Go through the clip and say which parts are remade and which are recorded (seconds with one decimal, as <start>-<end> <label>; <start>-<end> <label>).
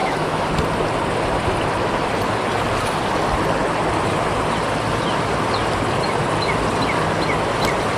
0.0-0.5 remade; 0.5-8.0 recorded